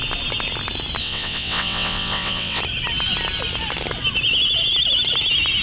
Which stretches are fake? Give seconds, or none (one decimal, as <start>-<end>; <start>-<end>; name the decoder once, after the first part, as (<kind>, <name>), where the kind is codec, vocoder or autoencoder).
1.0-2.6 (vocoder, WaveNeXt)